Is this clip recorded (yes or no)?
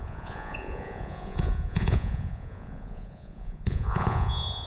no